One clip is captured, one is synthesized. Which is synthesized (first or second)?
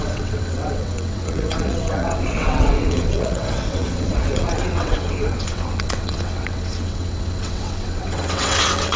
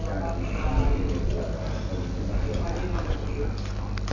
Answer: first